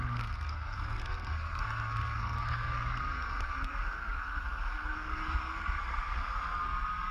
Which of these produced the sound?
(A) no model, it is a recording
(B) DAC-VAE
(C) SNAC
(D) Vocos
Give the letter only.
C